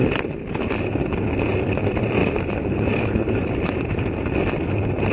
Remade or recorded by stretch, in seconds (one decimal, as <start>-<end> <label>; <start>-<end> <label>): 0.0-2.2 recorded; 2.2-4.0 remade; 4.0-5.1 recorded